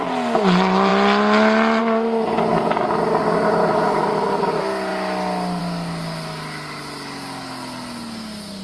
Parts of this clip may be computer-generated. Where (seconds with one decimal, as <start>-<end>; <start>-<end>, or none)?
none